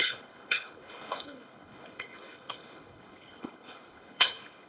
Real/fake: fake